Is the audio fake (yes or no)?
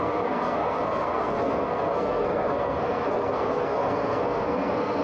yes